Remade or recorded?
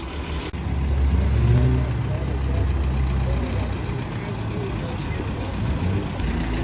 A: recorded